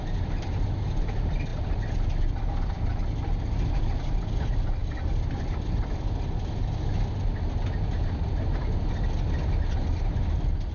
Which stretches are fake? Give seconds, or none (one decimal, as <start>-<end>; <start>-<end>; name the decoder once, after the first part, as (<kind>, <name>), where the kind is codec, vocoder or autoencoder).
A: none